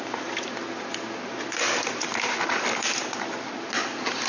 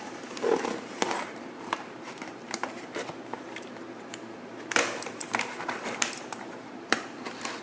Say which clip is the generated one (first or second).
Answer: second